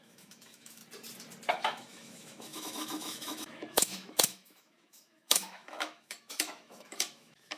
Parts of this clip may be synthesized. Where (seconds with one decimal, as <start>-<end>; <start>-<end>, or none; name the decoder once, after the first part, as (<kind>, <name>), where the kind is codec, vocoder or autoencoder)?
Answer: 0.0-0.8 (autoencoder, DAC-VAE); 1.5-7.6